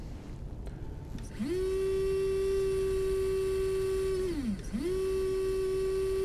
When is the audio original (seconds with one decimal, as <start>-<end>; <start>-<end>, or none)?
0.0-6.2